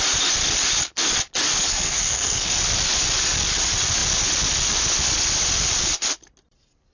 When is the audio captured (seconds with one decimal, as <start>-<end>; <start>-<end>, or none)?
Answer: 0.0-1.7; 2.5-6.9